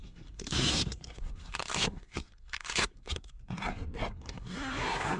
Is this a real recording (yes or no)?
no